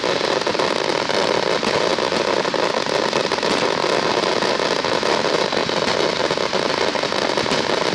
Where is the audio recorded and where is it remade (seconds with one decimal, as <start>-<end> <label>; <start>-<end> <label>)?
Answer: 0.0-1.9 remade; 1.9-2.7 recorded; 2.7-3.8 remade; 3.8-4.9 recorded; 4.9-5.6 remade; 5.6-7.9 recorded